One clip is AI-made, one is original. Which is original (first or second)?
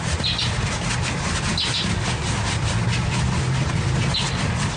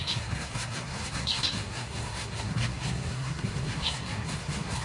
first